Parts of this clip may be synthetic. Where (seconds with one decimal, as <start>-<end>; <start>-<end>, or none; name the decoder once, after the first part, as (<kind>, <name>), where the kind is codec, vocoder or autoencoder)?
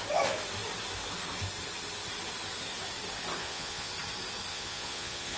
3.4-3.9 (vocoder, Vocos); 4.5-5.4